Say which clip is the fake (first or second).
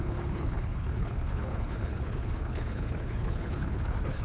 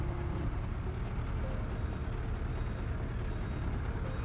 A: first